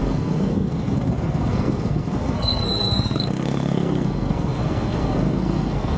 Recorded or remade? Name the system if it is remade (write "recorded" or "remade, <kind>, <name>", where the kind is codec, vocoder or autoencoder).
remade, codec, SNAC